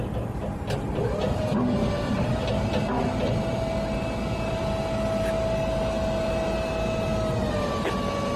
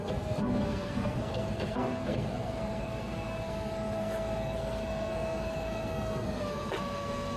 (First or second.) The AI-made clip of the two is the second